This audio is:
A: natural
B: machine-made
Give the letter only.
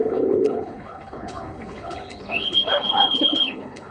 B